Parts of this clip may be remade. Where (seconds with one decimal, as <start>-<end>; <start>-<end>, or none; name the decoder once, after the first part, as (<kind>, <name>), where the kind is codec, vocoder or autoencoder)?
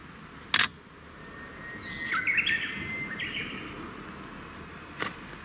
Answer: none